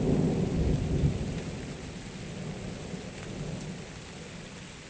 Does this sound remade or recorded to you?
recorded